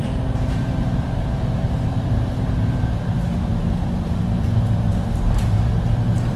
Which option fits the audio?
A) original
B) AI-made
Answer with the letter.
B